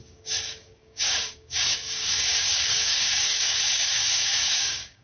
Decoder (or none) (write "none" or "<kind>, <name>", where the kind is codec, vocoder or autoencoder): codec, DAC